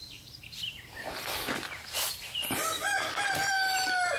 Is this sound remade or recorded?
recorded